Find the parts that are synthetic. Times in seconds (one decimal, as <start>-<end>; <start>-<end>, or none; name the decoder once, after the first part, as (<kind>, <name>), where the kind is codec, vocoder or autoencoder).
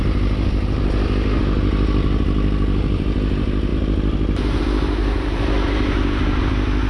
5.0-6.4 (vocoder, BigVGAN v2)